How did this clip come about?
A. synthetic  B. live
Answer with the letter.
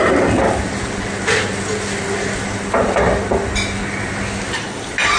B